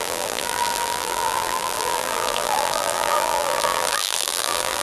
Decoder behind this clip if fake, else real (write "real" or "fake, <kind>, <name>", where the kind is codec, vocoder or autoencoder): fake, vocoder, BigVGAN v2